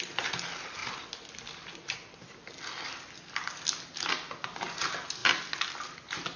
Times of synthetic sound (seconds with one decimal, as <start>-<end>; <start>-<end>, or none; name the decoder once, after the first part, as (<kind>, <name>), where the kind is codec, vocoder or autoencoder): none